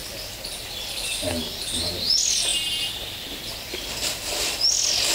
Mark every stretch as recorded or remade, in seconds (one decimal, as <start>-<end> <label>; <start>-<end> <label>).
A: 0.0-5.1 recorded